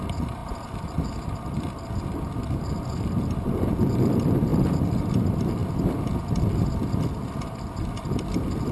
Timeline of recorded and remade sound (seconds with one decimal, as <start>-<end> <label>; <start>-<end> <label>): 0.0-5.6 remade; 5.6-6.3 recorded; 6.3-8.7 remade